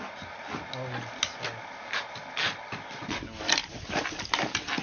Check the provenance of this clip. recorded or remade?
recorded